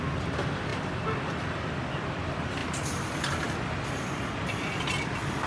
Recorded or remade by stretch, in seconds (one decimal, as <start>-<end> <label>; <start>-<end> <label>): 0.0-5.5 recorded